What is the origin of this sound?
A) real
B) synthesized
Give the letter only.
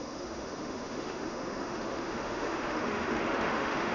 B